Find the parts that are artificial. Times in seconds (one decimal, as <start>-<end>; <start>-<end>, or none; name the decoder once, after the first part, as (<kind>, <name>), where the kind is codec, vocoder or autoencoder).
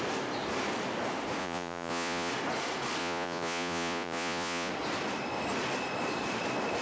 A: 1.4-2.3 (vocoder, Vocos); 3.0-4.7